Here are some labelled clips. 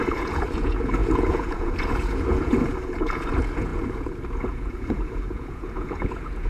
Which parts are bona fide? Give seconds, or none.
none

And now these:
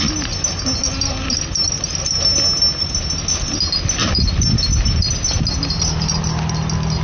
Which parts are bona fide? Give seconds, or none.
0.0-4.0; 5.1-7.0

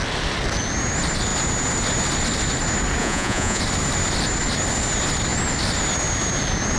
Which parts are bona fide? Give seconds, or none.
0.0-3.0; 3.6-6.8